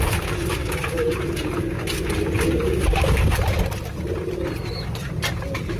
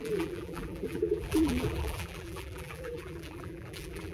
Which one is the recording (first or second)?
first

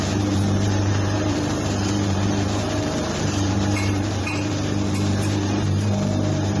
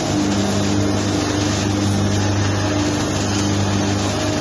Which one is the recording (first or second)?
second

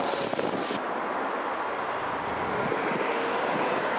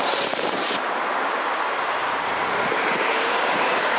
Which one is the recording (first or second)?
first